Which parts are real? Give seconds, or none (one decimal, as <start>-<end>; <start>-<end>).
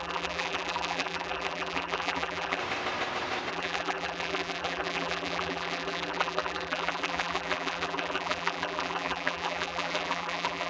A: 2.6-3.5